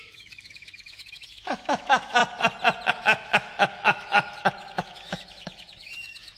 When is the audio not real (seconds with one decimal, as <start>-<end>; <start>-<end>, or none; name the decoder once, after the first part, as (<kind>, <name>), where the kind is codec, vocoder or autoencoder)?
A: 0.0-2.2 (autoencoder, DAC-VAE); 2.9-6.4